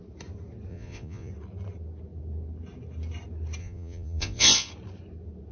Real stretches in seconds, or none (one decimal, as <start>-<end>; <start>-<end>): 0.0-0.7; 1.3-3.6; 4.7-5.5

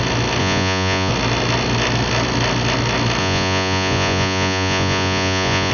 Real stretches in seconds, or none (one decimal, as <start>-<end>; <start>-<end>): 0.0-0.4; 1.1-3.2

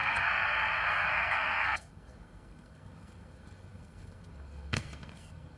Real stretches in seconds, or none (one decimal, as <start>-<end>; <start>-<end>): none

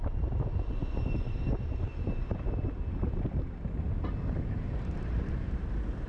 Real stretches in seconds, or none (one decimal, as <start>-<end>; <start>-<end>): 0.8-4.2

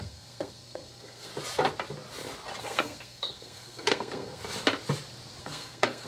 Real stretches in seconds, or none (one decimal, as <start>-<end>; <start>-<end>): 1.3-2.6; 4.4-5.4

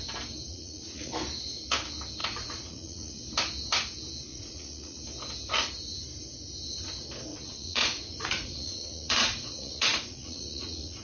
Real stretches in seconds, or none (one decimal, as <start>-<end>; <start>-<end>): 0.0-0.5; 1.1-2.2; 3.2-4.3; 5.0-7.3

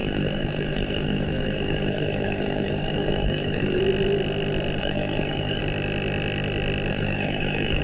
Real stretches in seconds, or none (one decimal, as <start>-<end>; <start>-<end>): 3.8-4.8; 5.6-6.9